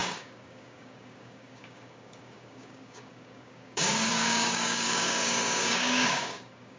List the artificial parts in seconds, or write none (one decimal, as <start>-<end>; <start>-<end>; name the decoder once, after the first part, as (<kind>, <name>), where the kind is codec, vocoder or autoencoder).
0.0-6.8 (codec, DAC)